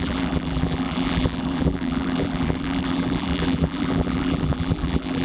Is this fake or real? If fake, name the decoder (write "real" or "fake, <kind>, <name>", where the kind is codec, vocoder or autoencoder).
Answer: fake, vocoder, BigVGAN v2